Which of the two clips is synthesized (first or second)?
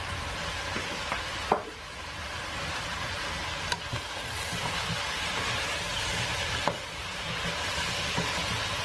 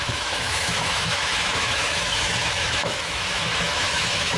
second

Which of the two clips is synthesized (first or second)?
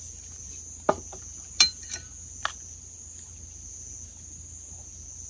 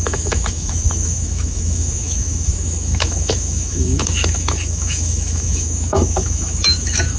second